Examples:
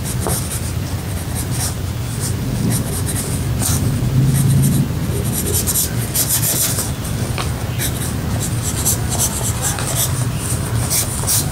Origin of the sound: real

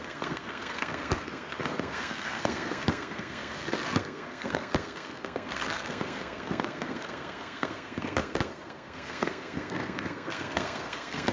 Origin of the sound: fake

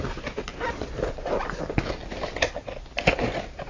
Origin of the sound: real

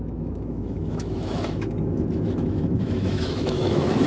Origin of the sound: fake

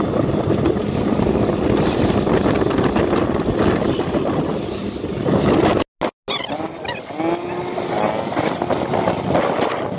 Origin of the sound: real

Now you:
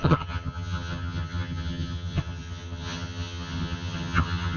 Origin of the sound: fake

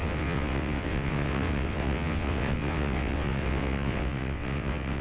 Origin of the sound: fake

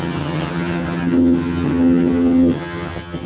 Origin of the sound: fake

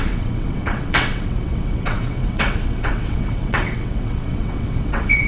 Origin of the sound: fake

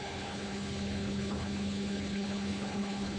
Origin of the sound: fake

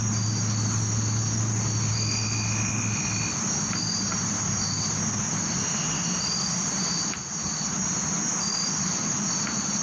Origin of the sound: real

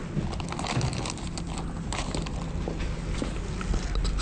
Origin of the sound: real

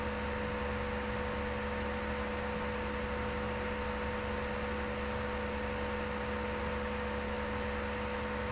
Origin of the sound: real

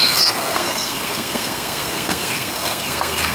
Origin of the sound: fake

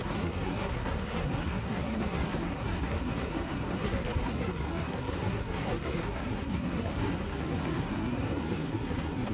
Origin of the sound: fake